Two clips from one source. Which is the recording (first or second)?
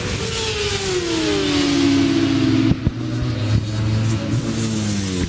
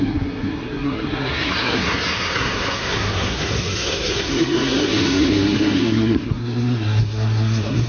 first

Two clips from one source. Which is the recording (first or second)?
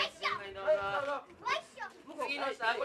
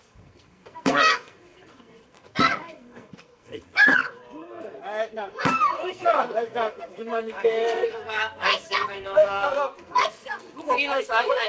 first